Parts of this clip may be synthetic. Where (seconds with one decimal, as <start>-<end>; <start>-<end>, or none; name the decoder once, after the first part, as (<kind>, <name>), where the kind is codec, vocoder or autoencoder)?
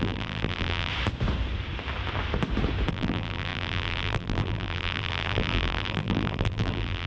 0.0-0.9 (vocoder, BigVGAN v2); 2.9-7.1